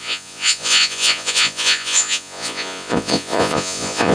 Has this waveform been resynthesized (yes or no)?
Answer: yes